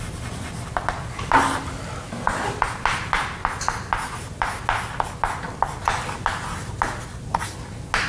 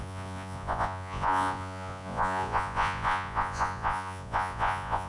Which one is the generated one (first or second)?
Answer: second